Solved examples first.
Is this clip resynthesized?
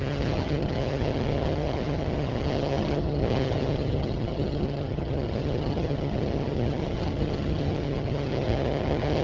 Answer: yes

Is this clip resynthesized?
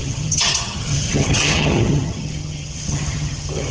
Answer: yes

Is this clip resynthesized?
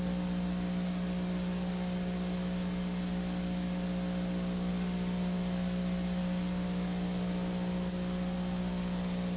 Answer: no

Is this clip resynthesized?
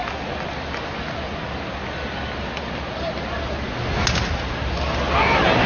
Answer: no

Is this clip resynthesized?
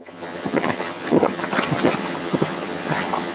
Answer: yes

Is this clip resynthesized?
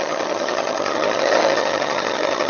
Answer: yes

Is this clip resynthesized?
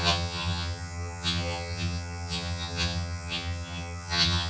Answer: yes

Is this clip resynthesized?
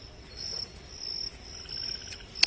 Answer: no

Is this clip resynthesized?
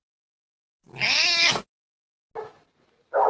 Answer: no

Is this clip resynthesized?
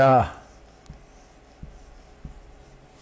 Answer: no